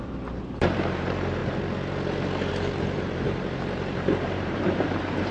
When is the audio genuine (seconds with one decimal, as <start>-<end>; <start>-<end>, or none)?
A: 1.4-2.5

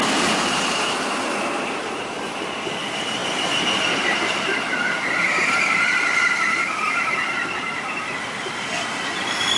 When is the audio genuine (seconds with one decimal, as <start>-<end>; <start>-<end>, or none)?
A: none